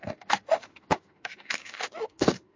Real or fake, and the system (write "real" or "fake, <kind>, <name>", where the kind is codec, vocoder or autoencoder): fake, autoencoder, DAC-VAE